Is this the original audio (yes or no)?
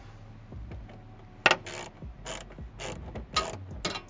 yes